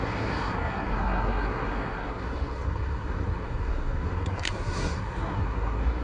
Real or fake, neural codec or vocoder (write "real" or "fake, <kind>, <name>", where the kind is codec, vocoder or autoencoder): fake, codec, SNAC